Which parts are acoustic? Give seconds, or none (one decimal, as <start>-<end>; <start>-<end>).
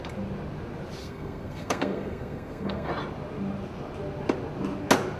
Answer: 0.0-1.0; 2.9-5.2